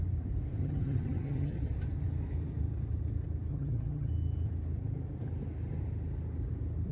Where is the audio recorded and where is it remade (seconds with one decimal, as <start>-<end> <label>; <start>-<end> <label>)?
0.0-0.6 recorded; 0.6-1.6 remade; 1.6-3.5 recorded; 3.5-4.1 remade; 4.1-6.9 recorded